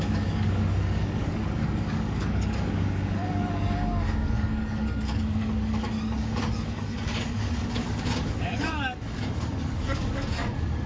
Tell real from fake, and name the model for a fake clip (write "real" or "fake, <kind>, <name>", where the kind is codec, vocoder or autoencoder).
fake, codec, DAC